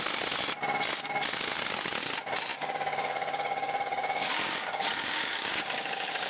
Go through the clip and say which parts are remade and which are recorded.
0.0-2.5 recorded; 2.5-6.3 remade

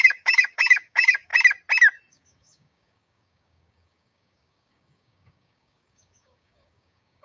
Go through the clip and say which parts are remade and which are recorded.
0.0-1.3 remade; 1.3-2.1 recorded; 2.1-7.2 remade

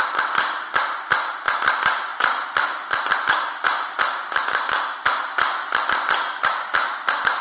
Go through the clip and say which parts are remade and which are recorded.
0.0-7.4 recorded

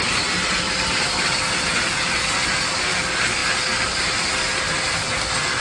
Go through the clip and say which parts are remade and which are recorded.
0.0-5.6 recorded

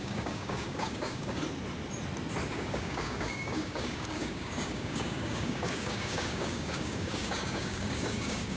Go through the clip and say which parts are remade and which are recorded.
0.0-1.4 remade; 1.4-2.5 recorded; 2.5-8.6 remade

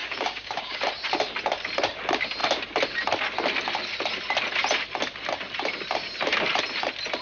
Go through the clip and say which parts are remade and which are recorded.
0.0-0.8 remade; 0.8-7.2 recorded